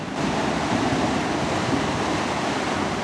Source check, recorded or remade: recorded